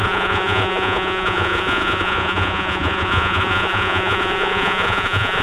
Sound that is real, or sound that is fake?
fake